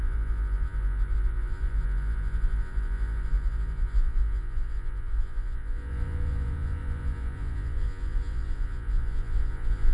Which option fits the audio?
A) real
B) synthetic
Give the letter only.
B